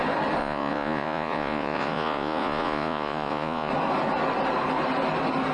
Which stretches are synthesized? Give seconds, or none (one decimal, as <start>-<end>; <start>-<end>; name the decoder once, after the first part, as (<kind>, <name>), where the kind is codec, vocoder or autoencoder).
0.4-3.7 (vocoder, Vocos)